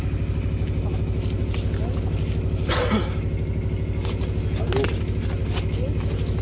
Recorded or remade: recorded